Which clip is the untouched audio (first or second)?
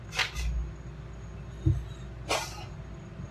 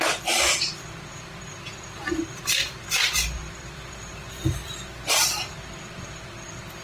first